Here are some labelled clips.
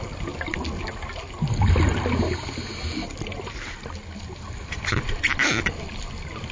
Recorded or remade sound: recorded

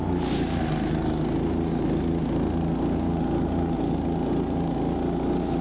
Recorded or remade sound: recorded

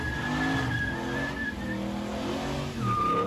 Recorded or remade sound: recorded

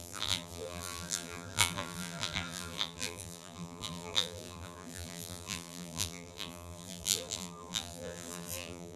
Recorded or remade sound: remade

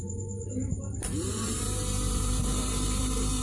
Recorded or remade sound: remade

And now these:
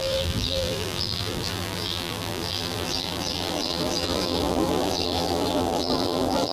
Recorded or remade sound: remade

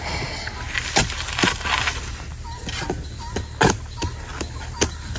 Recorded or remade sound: recorded